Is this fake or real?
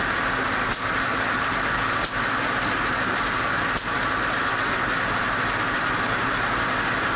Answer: real